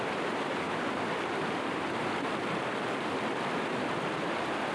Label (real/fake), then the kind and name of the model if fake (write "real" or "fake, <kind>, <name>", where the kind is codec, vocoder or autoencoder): real